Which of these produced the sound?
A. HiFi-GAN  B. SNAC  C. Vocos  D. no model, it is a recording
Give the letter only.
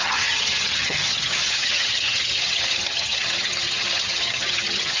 A